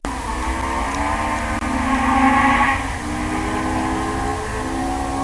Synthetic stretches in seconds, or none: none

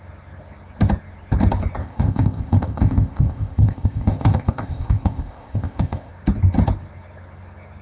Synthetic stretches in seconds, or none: 1.8-6.1 (codec, ZipCodec)

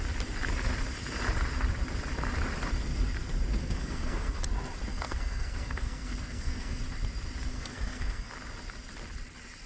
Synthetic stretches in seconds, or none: 3.6-4.4 (codec, SNAC); 4.9-6.8; 7.5-8.3

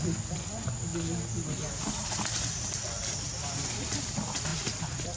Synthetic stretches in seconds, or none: none

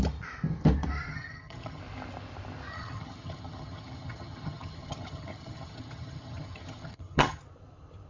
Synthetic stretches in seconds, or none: 1.1-1.8 (vocoder, HiFi-GAN); 2.7-7.4

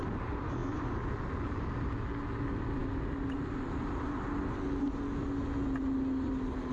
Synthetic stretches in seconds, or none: none